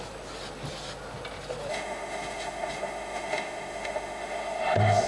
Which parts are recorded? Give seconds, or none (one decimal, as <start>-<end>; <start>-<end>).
0.0-1.7